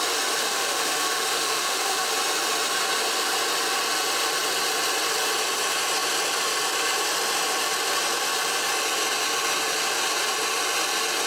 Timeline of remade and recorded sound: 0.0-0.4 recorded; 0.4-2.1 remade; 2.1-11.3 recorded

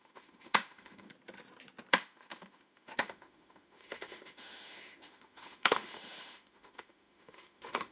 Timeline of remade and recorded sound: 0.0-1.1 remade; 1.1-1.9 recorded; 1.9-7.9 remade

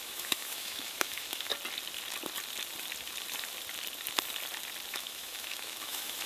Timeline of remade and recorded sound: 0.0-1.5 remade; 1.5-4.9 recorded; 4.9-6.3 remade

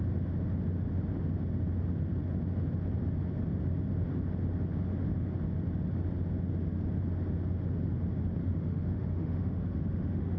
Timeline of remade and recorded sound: 0.0-8.4 recorded; 8.4-10.4 remade

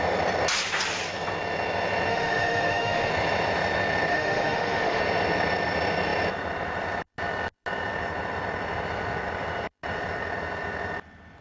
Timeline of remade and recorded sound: 0.0-2.1 recorded; 2.1-3.1 remade; 3.1-4.1 recorded; 4.1-5.0 remade; 5.0-11.4 recorded

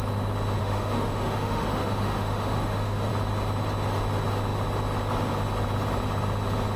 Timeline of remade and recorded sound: 0.0-0.6 recorded; 0.6-3.1 remade; 3.1-6.8 recorded

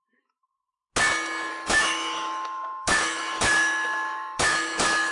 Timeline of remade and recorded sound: 0.0-0.5 remade; 0.5-1.5 recorded; 1.5-5.1 remade